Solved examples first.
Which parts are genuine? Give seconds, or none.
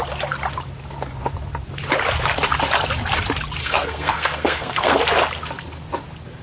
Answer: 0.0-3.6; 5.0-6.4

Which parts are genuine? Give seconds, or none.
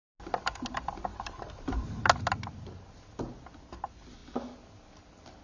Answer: 0.0-1.1; 2.0-5.4